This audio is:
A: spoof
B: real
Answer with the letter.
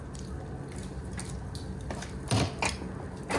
B